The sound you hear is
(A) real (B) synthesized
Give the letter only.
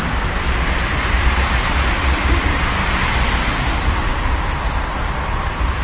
B